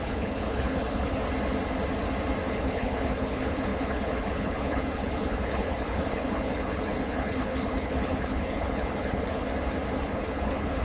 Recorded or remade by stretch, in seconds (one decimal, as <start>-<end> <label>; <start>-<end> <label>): 0.0-1.2 remade; 1.2-2.5 recorded; 2.5-9.5 remade; 9.5-10.0 recorded; 10.0-10.8 remade